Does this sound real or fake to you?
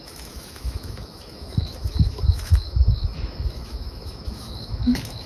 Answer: fake